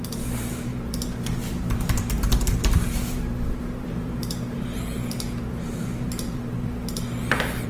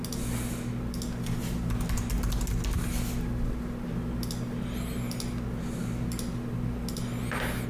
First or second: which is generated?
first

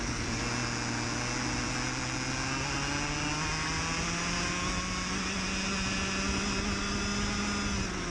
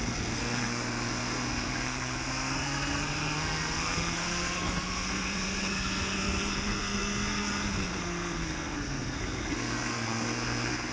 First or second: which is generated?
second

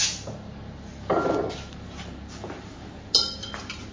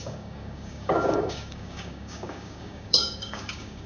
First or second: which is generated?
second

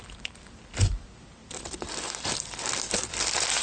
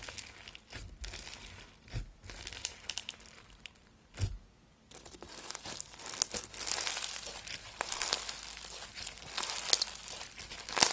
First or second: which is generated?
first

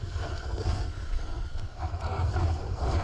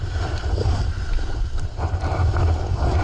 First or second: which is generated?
first